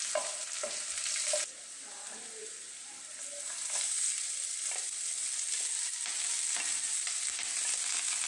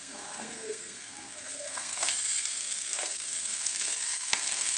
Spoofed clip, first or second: second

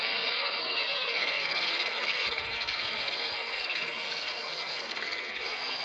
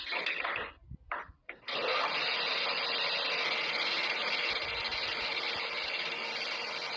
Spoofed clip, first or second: first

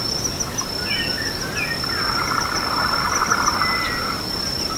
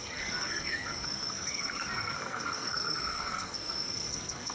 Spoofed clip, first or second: second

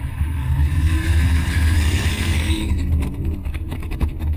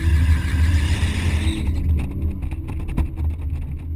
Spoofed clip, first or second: first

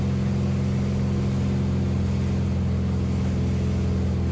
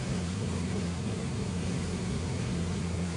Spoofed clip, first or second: second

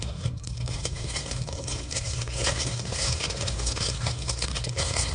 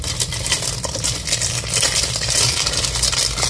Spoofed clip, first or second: first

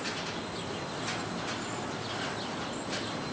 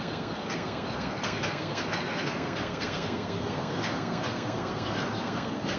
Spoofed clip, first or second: second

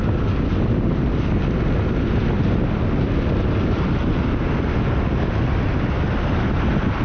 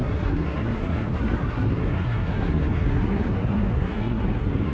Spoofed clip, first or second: second